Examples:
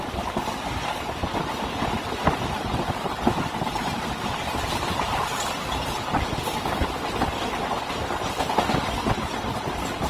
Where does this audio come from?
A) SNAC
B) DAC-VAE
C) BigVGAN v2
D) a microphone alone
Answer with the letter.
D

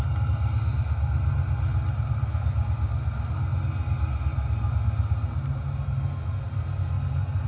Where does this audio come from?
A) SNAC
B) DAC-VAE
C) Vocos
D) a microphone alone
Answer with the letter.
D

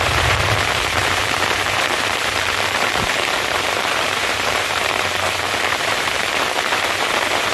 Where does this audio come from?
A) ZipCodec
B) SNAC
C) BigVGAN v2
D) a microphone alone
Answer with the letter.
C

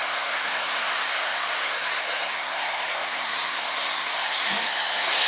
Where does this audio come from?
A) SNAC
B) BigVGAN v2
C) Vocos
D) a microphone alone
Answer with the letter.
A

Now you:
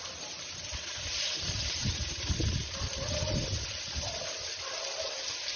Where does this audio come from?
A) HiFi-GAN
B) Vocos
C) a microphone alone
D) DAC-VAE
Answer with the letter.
C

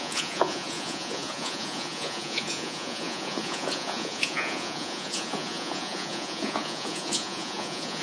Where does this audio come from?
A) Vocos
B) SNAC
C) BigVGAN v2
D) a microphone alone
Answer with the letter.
A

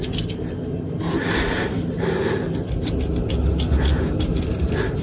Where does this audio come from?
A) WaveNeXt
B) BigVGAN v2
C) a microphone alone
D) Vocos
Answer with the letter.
C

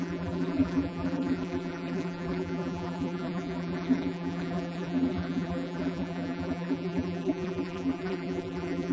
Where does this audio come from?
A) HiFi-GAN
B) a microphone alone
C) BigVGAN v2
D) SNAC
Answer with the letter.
C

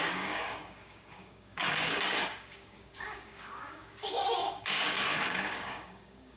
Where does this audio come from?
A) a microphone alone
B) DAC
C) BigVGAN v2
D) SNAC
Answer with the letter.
B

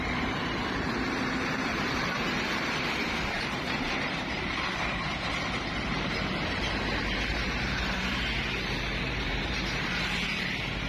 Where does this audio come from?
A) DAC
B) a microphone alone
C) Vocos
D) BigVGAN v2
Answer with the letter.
D